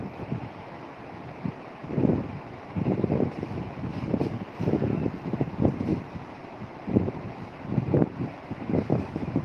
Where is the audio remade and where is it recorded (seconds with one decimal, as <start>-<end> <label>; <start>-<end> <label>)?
0.0-9.4 recorded